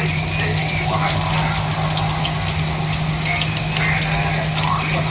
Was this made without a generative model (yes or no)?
yes